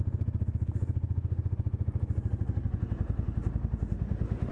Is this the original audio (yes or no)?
yes